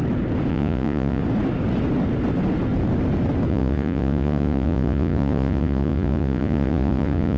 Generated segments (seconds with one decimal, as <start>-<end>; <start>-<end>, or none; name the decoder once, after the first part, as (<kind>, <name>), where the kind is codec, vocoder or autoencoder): 0.5-1.2 (vocoder, Vocos); 3.5-7.4